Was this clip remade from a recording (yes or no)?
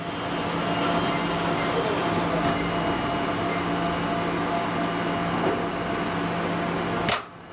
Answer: no